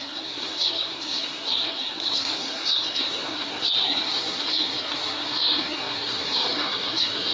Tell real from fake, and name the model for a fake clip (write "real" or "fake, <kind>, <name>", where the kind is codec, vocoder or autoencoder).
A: fake, codec, SNAC